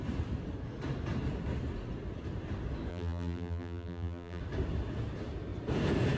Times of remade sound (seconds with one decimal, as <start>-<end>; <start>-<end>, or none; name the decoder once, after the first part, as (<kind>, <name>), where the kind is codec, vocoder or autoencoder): 2.9-4.4 (vocoder, BigVGAN v2)